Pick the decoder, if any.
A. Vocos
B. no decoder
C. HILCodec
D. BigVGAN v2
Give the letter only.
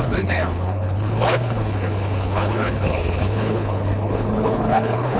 C